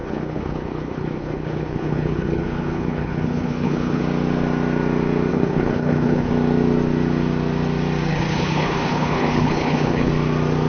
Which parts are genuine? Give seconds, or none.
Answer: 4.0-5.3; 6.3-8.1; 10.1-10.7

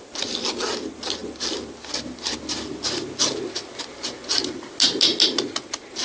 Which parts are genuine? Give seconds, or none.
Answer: 0.0-6.0